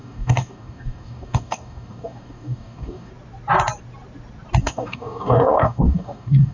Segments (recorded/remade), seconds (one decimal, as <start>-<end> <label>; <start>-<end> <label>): 0.0-3.1 remade; 3.1-4.6 recorded; 4.6-6.5 remade